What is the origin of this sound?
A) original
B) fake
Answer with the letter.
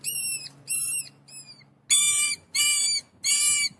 A